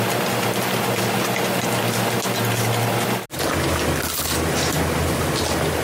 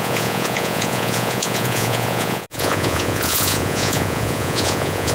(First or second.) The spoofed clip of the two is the second